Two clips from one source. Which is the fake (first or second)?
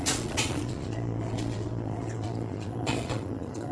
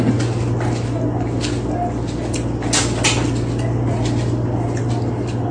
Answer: first